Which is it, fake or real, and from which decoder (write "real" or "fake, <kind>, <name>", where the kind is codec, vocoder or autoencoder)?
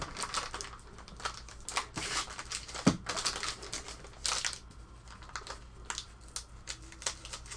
real